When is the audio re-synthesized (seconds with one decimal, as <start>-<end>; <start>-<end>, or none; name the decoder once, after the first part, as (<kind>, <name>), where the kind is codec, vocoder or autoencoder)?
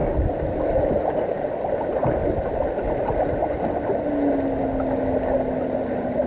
none